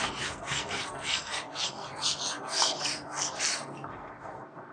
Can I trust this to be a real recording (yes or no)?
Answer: no